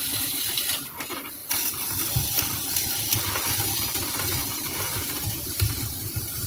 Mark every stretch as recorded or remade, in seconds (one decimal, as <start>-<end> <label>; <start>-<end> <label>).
0.0-1.4 remade; 1.4-3.4 recorded; 3.4-6.5 remade